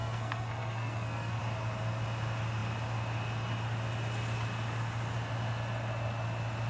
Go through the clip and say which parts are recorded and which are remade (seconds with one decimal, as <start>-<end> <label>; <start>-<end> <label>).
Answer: 0.0-1.4 remade; 1.4-6.7 recorded